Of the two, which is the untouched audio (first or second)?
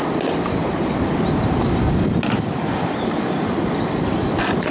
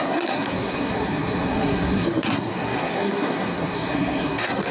first